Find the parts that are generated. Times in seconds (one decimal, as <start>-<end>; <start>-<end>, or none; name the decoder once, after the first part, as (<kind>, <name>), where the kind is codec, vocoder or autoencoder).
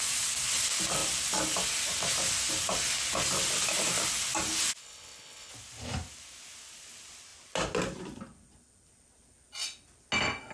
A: 4.8-5.5 (codec, HILCodec)